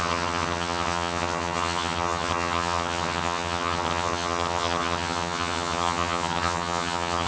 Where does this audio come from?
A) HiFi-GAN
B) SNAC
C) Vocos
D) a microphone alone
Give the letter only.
A